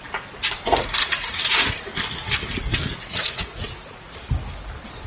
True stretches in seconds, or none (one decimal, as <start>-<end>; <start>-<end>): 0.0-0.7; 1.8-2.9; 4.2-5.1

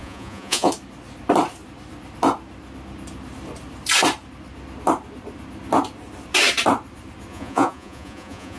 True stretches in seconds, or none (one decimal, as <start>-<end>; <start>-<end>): 0.7-7.3

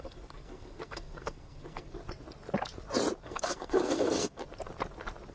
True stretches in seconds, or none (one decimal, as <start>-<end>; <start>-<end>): 2.0-3.2; 4.4-5.3

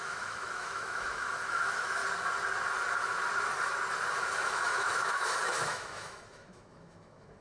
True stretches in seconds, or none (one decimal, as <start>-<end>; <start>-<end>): 2.0-4.4